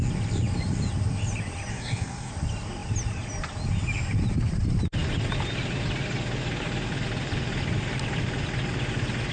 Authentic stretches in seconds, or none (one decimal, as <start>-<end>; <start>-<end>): 0.0-1.7; 2.3-9.3